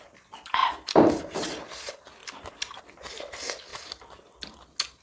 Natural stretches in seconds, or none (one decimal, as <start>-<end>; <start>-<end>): 0.0-0.6; 1.2-2.2; 2.8-5.0